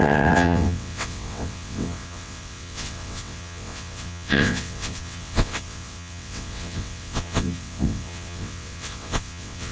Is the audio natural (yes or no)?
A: no